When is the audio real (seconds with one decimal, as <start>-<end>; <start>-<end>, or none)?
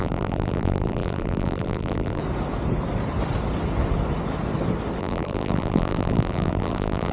2.2-5.0